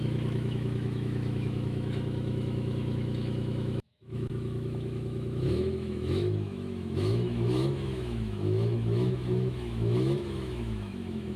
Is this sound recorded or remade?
remade